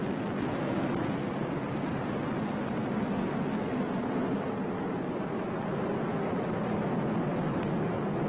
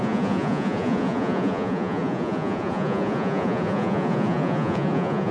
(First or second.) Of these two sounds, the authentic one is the first